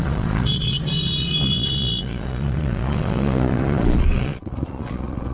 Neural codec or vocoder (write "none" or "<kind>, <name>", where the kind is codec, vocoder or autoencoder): vocoder, Vocos